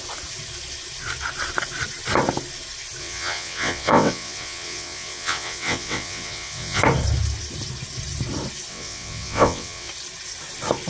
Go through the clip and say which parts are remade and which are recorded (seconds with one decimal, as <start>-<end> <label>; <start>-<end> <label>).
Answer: 0.0-3.0 recorded; 3.0-6.8 remade; 6.8-8.7 recorded; 8.7-9.9 remade; 9.9-10.9 recorded